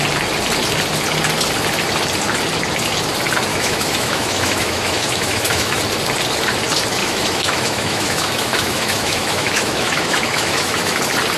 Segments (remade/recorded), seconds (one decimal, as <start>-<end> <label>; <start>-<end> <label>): 0.0-3.5 recorded; 3.5-5.8 remade; 5.8-7.0 recorded; 7.0-11.0 remade; 11.0-11.4 recorded